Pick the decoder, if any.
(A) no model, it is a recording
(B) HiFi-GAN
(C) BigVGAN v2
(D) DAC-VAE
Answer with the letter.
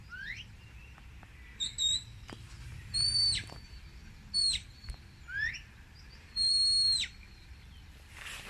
C